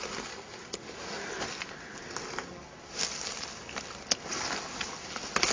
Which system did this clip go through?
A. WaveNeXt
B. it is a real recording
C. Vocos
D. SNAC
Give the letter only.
B